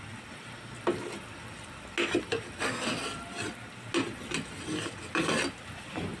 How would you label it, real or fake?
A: real